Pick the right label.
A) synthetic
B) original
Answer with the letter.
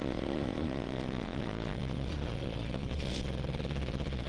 A